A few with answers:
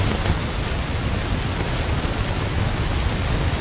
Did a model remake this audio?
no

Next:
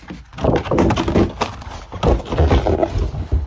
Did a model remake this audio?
no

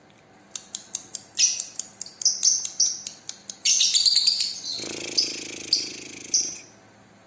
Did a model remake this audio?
no